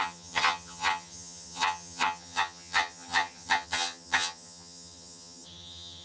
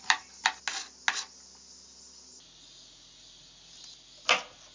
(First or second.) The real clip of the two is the second